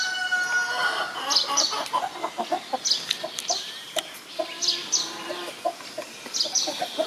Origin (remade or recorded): recorded